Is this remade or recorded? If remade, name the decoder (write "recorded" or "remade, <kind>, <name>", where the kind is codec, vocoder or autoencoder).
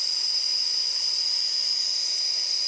recorded